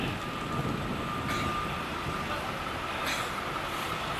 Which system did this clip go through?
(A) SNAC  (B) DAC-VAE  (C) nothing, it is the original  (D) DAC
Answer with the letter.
C